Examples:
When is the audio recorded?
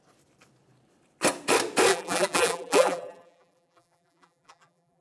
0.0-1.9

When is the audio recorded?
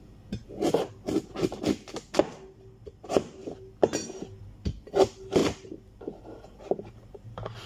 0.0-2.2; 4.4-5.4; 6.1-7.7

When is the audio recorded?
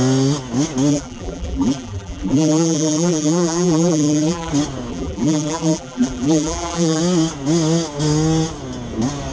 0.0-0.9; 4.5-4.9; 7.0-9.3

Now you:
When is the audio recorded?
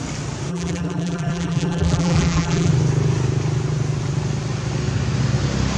0.0-0.5; 2.7-5.8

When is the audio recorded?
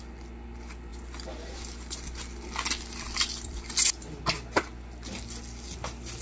0.0-6.2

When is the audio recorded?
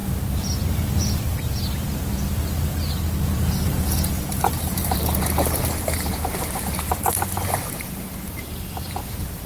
0.0-3.4